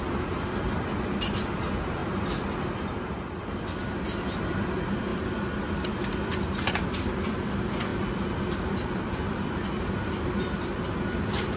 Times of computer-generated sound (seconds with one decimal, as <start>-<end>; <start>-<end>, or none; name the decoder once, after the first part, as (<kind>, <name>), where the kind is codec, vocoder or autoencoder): none

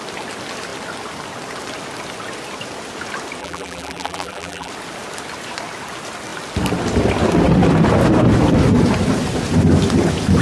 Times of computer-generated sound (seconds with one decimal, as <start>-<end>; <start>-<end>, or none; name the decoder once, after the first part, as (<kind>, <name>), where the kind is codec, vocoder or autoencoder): 3.4-4.7 (vocoder, BigVGAN v2)